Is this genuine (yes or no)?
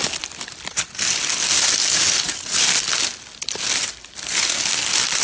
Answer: yes